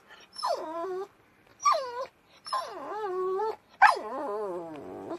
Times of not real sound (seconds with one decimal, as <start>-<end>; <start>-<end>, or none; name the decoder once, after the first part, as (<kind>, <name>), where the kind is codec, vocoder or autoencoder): 0.0-5.2 (vocoder, BigVGAN v2)